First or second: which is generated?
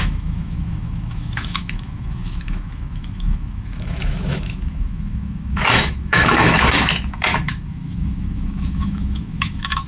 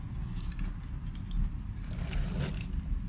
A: first